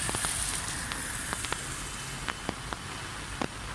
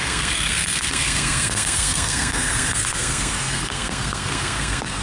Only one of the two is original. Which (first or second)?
first